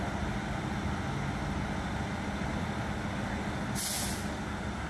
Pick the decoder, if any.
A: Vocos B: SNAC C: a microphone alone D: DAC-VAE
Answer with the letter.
C